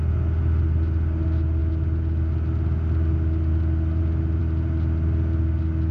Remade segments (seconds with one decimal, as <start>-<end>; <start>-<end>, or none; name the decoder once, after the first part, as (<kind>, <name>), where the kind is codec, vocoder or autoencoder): none